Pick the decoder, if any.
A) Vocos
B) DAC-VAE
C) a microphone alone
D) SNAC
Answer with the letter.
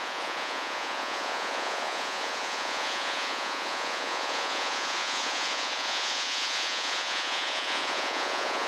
A